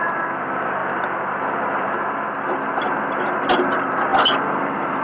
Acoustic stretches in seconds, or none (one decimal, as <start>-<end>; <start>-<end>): 0.0-4.1